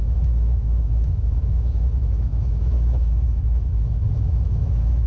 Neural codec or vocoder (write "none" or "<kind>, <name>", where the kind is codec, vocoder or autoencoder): autoencoder, DAC-VAE